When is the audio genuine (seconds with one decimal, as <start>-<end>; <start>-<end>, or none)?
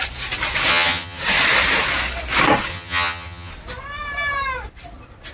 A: 0.0-0.7; 1.2-2.7; 3.5-5.3